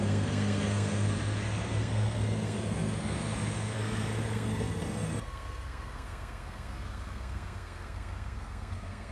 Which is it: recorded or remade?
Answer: remade